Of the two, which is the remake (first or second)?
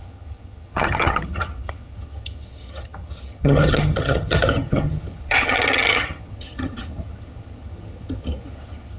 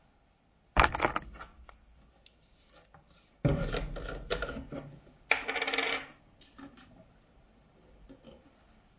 first